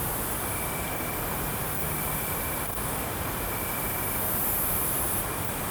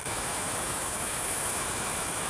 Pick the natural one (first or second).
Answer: first